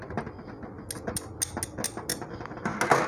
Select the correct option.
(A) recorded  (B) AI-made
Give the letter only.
A